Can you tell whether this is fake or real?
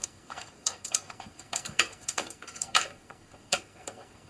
fake